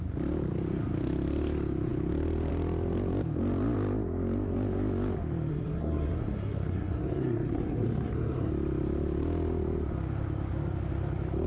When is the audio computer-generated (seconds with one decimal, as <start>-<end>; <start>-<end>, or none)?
5.5-8.5